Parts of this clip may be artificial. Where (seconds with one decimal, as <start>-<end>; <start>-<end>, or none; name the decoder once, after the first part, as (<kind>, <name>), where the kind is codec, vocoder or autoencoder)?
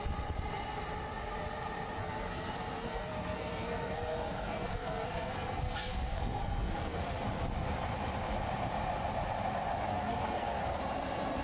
2.0-7.2 (codec, SNAC); 9.9-10.8